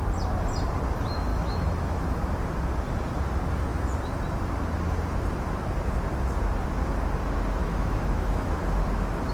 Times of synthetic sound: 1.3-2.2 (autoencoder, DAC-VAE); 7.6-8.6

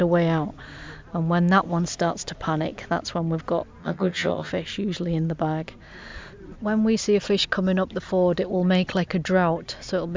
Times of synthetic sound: 3.8-4.5 (vocoder, HiFi-GAN)

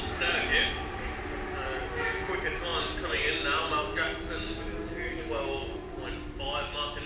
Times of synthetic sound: none

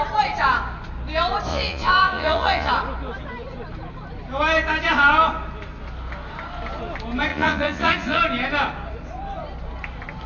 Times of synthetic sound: 1.5-2.7 (vocoder, Vocos); 7.3-8.2

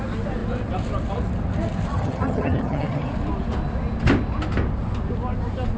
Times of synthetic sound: 1.9-3.1 (vocoder, HiFi-GAN)

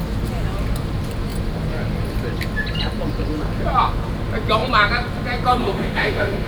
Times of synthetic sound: 5.6-6.5 (autoencoder, DAC-VAE)

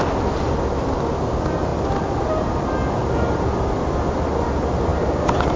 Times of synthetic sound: 4.9-5.6 (vocoder, BigVGAN v2)

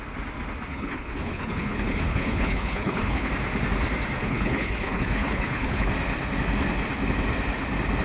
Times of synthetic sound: 0.7-3.3 (codec, HILCodec); 4.2-5.9